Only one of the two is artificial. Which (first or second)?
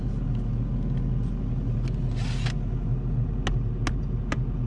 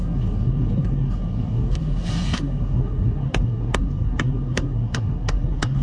second